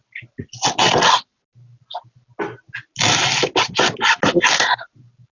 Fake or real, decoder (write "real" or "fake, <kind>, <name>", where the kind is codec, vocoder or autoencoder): real